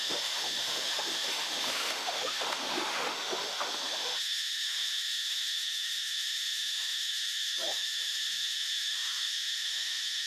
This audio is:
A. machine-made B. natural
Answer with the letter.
A